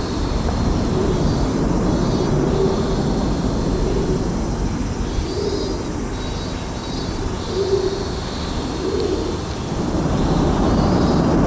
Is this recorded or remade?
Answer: recorded